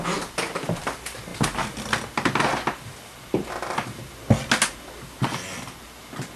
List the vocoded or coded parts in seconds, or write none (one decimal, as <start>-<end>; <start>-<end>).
none